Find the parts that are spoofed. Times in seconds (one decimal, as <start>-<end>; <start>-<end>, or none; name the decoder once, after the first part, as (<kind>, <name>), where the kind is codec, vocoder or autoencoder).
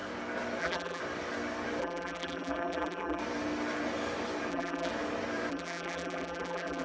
0.6-1.0 (vocoder, BigVGAN v2); 1.8-3.2; 4.5-4.9; 5.5-6.8